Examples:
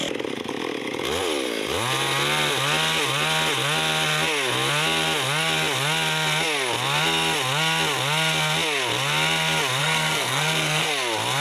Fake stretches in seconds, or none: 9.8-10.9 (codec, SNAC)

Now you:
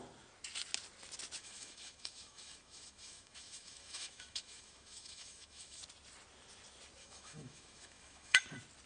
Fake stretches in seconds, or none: 1.4-5.8 (autoencoder, DAC-VAE); 7.0-8.4

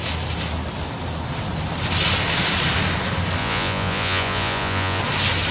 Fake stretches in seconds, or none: 3.4-5.0 (vocoder, Vocos)